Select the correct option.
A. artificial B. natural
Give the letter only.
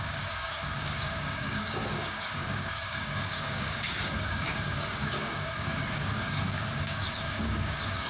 A